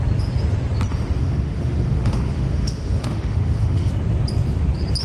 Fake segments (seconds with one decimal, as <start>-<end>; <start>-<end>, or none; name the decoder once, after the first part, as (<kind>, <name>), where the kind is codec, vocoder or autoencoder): 0.9-3.9 (autoencoder, DAC-VAE)

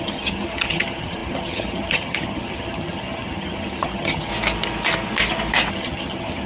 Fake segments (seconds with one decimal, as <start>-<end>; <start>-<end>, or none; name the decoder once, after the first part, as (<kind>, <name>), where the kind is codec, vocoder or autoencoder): 0.0-4.3 (vocoder, HiFi-GAN); 5.7-6.5

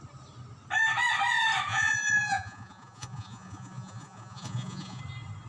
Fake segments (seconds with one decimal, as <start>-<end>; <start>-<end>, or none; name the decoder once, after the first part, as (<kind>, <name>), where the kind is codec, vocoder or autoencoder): 1.7-5.0 (vocoder, Vocos)

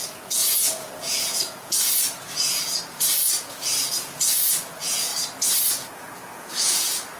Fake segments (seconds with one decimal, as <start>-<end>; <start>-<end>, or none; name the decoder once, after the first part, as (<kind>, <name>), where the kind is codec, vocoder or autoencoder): 0.0-5.1 (vocoder, Vocos); 5.7-7.2

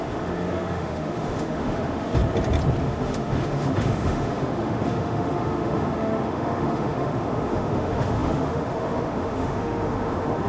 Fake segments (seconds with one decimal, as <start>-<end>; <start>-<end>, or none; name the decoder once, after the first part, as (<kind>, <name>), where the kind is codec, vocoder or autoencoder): 0.0-2.2 (autoencoder, DAC-VAE); 2.8-10.5

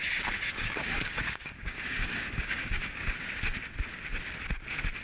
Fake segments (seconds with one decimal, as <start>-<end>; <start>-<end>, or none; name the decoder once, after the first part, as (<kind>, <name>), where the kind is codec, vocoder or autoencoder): 0.5-3.1 (codec, DAC)